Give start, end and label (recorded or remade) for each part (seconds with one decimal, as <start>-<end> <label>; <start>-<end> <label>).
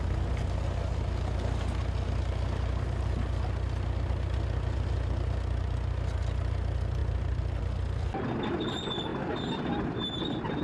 0.0-10.6 recorded